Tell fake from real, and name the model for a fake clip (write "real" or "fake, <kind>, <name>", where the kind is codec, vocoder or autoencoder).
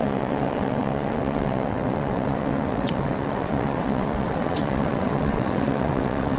fake, vocoder, WaveNeXt